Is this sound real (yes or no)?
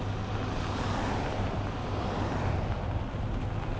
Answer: yes